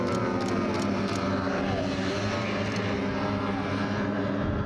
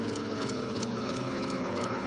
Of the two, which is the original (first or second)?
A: first